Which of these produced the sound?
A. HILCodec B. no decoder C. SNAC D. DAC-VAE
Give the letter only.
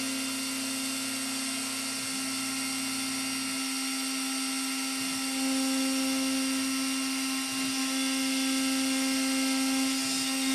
B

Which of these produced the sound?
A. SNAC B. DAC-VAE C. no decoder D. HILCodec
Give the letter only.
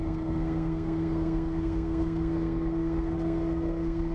A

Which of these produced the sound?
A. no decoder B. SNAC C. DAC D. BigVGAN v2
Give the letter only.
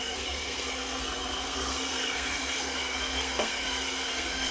B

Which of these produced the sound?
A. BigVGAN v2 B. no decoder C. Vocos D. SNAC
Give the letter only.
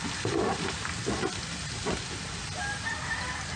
B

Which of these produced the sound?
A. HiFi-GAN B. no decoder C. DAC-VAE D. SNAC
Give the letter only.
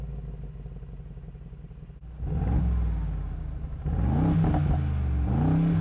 B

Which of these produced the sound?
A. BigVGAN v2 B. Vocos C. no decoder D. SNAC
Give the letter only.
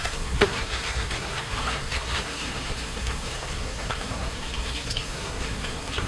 D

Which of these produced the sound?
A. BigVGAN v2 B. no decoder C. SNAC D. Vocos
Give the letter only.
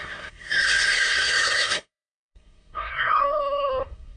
C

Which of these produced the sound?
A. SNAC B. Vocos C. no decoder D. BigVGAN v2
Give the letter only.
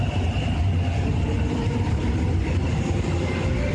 C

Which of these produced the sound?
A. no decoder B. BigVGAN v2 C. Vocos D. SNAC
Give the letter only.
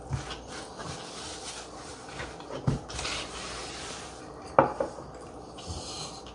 A